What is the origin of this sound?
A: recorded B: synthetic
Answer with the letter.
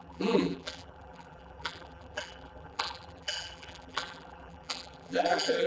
B